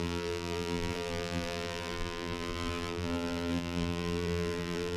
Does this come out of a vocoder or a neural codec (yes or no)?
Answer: yes